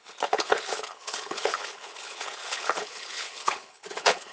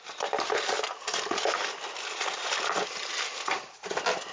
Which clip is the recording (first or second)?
second